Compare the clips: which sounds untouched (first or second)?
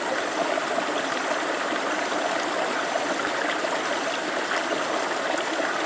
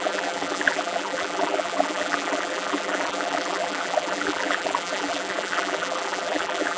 first